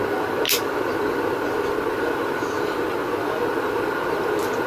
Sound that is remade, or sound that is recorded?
recorded